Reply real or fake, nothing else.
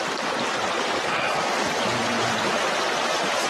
real